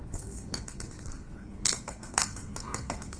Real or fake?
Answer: fake